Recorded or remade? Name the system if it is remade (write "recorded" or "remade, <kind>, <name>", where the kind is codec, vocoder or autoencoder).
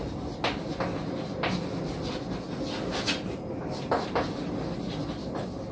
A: recorded